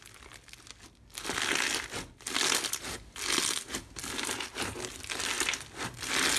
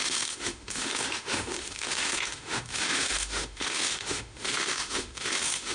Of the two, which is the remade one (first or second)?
second